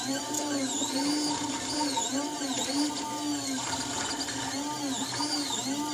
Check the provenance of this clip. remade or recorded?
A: remade